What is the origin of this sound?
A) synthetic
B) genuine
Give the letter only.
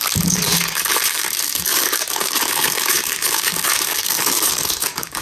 A